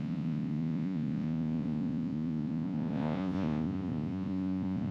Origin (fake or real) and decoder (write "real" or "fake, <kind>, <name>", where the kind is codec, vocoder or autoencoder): fake, vocoder, Vocos